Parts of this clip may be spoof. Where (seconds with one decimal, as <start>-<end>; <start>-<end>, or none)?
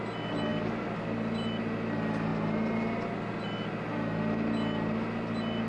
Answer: none